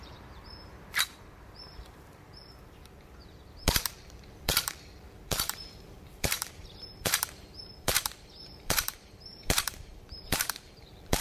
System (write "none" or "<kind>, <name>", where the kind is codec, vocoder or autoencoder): vocoder, BigVGAN v2